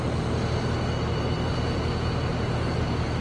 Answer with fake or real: real